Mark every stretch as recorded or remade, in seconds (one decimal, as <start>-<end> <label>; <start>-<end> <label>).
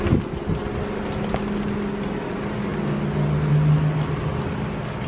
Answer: 0.0-5.1 recorded